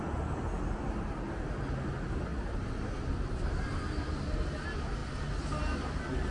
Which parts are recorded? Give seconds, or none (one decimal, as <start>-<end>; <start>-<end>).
0.0-6.3